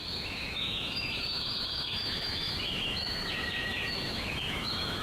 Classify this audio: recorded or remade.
remade